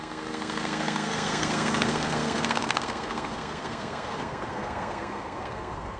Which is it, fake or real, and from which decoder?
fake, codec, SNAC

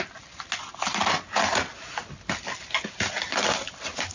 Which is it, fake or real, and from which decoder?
real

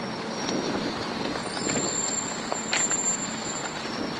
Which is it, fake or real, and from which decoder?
real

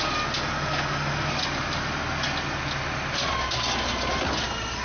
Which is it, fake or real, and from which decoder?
real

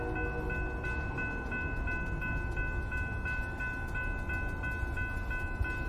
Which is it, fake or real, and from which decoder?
real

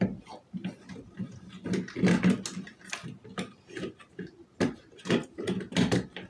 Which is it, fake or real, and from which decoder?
real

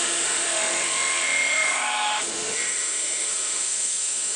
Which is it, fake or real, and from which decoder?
fake, autoencoder, DAC-VAE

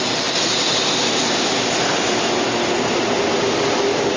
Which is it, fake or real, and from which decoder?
real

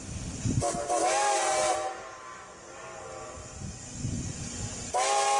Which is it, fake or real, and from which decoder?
real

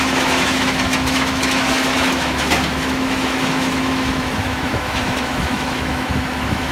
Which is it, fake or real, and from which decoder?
fake, autoencoder, DAC-VAE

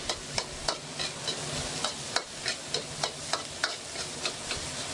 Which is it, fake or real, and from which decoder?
real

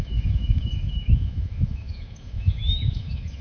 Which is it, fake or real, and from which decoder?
fake, autoencoder, DAC-VAE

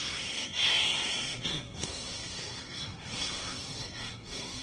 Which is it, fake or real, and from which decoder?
fake, codec, SNAC